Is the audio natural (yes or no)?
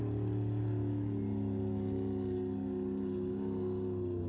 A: yes